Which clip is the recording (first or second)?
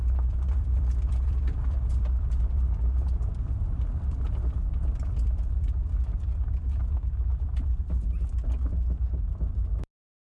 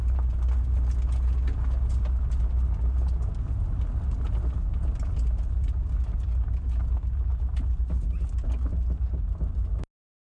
second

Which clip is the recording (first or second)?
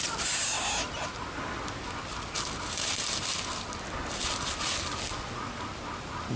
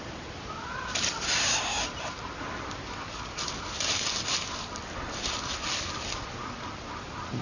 first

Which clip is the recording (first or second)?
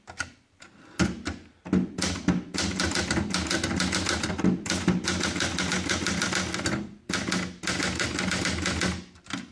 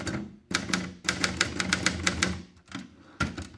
first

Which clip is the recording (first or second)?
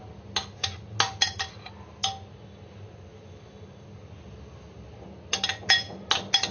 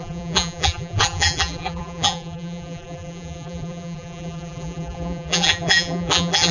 first